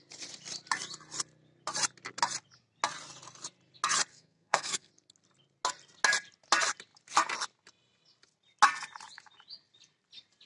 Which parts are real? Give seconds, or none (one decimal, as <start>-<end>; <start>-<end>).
0.0-4.1; 4.9-10.5